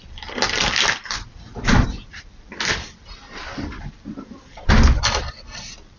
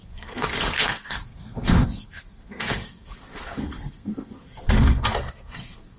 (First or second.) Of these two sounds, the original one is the first